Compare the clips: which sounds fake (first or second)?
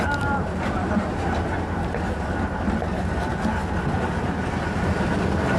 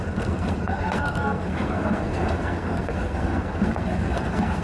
second